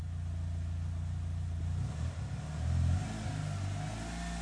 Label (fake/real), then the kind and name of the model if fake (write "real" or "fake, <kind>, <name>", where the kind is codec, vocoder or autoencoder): real